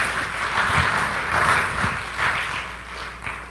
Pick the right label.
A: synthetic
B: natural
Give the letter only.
B